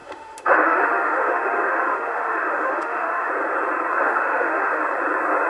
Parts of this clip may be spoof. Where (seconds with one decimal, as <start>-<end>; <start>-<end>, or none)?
0.0-3.3; 4.0-4.8